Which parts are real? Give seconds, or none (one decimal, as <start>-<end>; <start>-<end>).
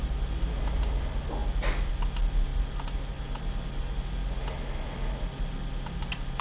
0.0-6.4